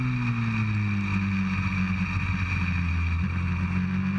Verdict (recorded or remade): recorded